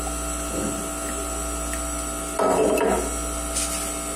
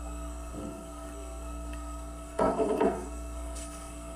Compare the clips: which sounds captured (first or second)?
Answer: first